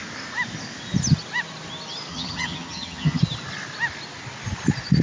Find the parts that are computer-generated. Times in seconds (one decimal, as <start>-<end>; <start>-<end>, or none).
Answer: 2.1-3.2